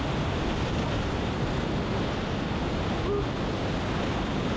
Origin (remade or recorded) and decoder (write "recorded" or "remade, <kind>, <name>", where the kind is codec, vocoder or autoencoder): recorded